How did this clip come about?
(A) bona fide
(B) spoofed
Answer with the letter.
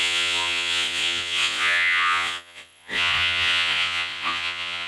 B